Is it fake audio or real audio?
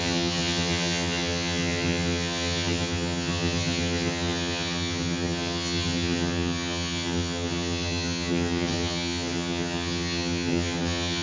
fake